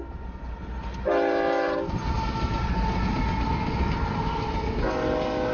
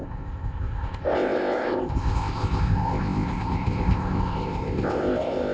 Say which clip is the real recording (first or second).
first